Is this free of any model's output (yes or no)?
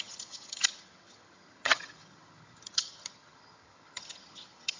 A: no